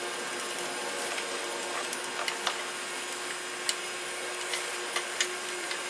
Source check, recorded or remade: recorded